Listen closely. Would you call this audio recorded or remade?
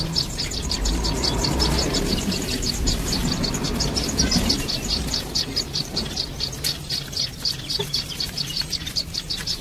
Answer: remade